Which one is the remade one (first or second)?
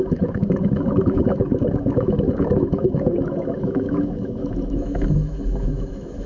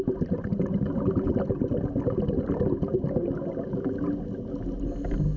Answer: first